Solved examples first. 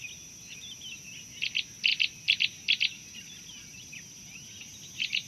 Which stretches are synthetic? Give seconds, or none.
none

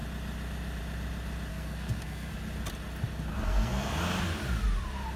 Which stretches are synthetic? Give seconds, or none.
1.5-2.3 (codec, SNAC); 3.3-4.0

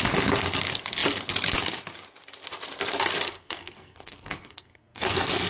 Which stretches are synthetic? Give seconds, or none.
3.3-5.5 (codec, SNAC)

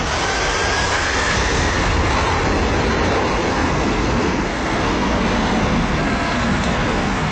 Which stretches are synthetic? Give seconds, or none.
0.9-2.1 (codec, SNAC); 3.5-7.3

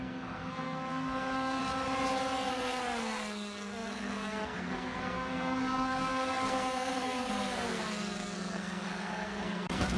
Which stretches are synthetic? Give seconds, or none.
0.0-1.6 (codec, SNAC); 2.5-10.0

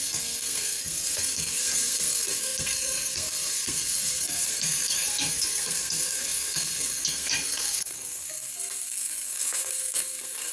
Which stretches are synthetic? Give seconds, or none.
0.0-10.5 (codec, SNAC)

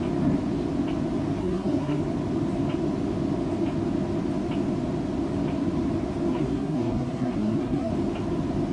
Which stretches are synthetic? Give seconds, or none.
1.4-2.0 (codec, SNAC); 6.3-7.9